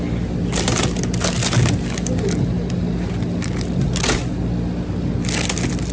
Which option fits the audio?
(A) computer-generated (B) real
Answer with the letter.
B